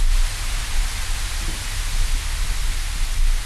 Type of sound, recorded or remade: recorded